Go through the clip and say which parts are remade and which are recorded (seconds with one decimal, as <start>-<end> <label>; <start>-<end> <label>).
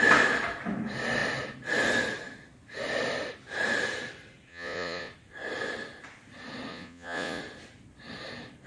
0.0-4.5 recorded; 4.5-5.1 remade; 5.1-6.7 recorded; 6.7-7.4 remade; 7.4-8.7 recorded